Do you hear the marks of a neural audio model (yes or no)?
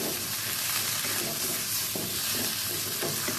no